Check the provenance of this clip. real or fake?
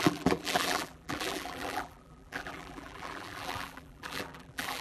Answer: fake